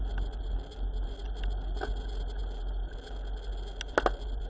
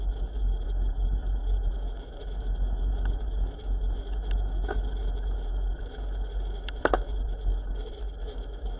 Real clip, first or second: first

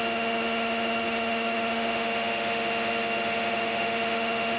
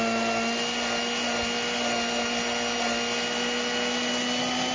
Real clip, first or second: second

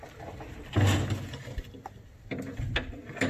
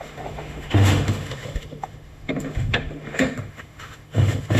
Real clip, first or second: first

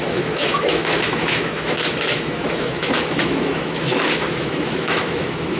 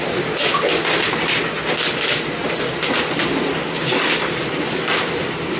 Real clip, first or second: second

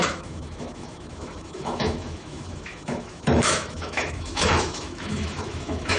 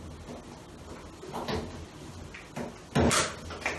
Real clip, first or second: second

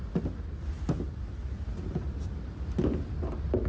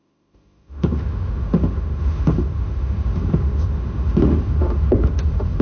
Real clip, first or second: first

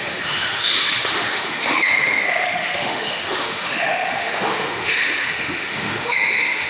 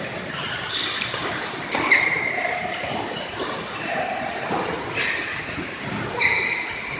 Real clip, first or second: second